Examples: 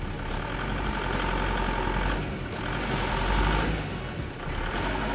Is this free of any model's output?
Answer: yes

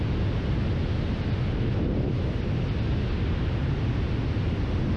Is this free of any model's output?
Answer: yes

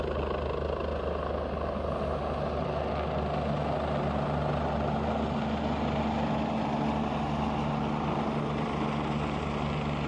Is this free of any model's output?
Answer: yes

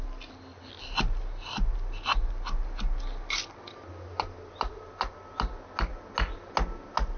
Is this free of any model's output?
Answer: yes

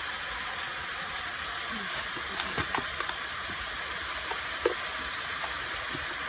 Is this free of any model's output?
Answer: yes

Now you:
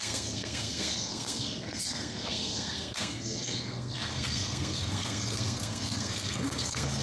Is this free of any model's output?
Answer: no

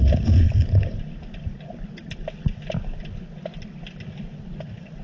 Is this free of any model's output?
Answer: yes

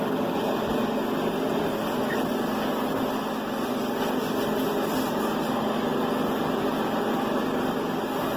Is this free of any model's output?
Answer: yes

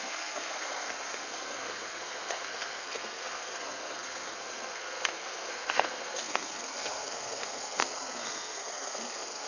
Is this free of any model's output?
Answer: no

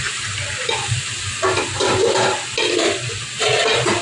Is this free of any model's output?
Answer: yes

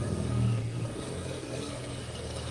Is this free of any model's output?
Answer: no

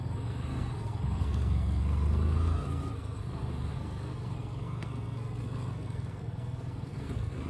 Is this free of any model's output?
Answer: no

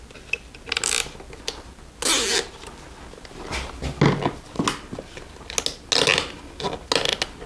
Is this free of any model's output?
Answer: yes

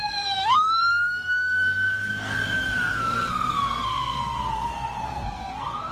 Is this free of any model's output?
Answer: no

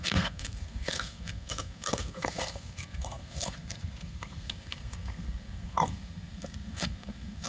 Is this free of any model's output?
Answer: no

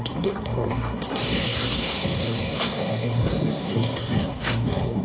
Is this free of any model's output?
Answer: no